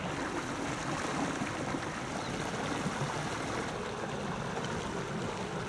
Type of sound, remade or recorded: recorded